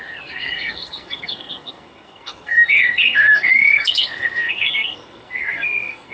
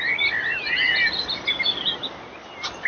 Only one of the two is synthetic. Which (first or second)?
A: first